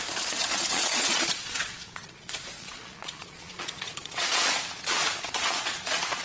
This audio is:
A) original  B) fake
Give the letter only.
B